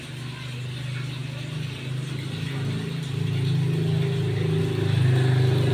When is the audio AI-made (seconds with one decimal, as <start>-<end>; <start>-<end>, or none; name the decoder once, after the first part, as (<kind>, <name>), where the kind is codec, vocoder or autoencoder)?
none

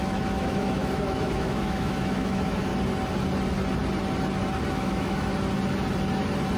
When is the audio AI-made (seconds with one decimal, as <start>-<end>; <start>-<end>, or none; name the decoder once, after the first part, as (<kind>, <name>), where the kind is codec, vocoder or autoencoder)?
0.0-2.7 (autoencoder, DAC-VAE); 4.7-5.3

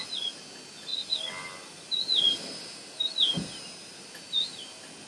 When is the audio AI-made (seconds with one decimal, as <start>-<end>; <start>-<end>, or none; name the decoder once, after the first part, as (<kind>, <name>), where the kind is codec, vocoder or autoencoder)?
none

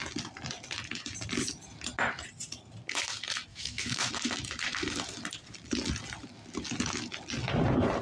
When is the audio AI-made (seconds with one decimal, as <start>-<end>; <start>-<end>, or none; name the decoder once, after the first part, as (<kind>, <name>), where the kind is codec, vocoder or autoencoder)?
3.5-4.1 (autoencoder, DAC-VAE)

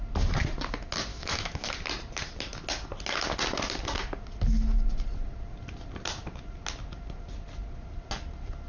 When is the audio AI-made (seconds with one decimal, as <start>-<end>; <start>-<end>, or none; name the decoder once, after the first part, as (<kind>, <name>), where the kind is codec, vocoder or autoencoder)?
1.1-1.7 (autoencoder, DAC-VAE)

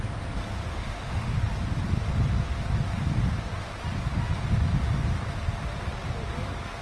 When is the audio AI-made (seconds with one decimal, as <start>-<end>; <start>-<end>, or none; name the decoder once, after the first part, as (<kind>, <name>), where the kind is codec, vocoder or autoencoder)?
0.7-1.4 (autoencoder, DAC-VAE)

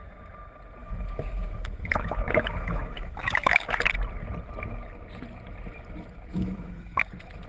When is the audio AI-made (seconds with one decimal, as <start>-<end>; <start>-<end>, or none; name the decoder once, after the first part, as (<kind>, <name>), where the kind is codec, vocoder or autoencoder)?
0.8-3.8 (autoencoder, DAC-VAE); 6.3-7.0

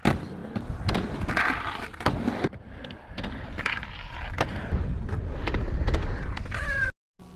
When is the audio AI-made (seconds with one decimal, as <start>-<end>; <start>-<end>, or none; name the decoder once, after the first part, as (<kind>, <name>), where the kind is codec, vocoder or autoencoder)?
none